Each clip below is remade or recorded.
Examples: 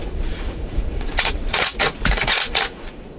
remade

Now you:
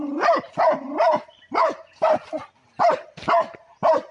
recorded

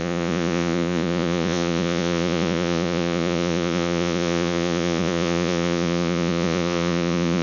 remade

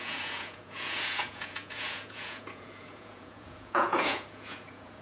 remade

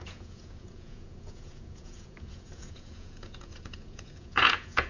remade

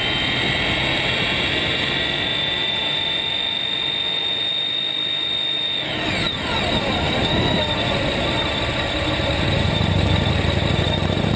recorded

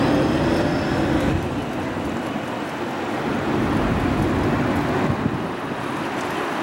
recorded